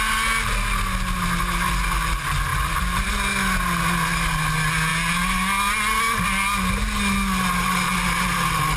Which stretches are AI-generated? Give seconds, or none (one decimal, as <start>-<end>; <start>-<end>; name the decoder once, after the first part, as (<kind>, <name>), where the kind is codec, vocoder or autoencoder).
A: 2.5-3.1 (vocoder, BigVGAN v2)